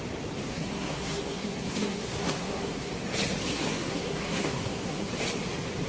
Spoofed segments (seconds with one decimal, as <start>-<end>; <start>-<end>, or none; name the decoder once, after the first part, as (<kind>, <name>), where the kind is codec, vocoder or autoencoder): 0.5-2.9 (codec, SNAC); 3.5-5.1